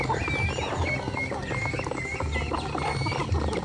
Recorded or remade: recorded